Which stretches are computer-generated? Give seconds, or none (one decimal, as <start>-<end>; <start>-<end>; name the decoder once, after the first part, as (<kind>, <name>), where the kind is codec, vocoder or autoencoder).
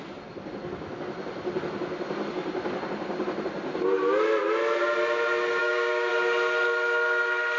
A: 5.6-6.1 (codec, DAC)